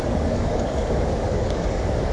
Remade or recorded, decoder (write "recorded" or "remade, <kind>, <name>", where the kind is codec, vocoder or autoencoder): remade, codec, DAC